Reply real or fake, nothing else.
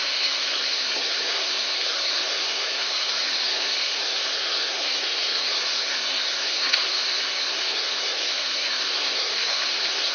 fake